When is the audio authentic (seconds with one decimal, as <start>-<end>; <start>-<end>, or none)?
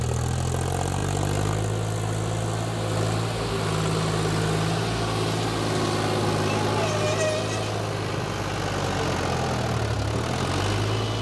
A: 0.0-11.2